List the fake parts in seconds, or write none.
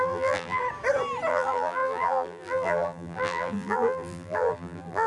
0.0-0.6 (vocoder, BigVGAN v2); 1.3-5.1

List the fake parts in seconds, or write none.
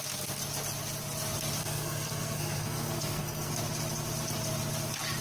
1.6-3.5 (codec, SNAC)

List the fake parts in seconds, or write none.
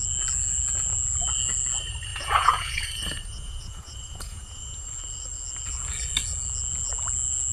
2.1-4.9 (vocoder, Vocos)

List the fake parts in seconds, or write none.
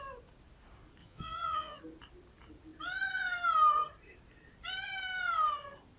1.0-1.8 (vocoder, Vocos)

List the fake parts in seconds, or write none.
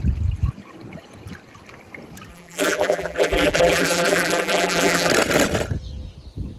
2.3-5.1 (vocoder, BigVGAN v2)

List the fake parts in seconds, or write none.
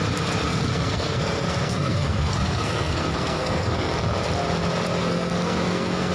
0.5-3.9 (codec, SNAC); 5.0-6.1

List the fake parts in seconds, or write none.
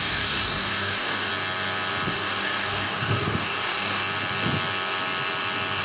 0.0-1.3 (codec, DAC); 2.1-4.0